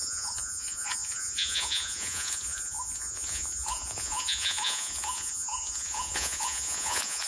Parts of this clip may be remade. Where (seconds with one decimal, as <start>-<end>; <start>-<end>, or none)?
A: 0.0-7.3